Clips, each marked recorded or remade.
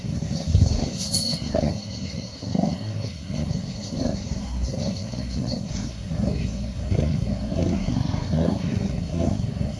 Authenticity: remade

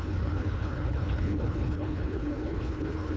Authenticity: remade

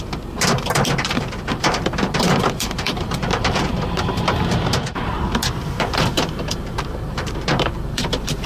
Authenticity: remade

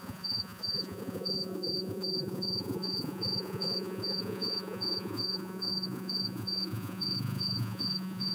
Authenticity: remade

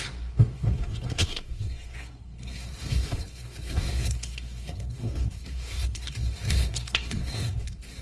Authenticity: remade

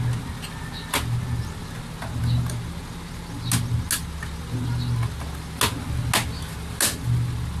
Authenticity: recorded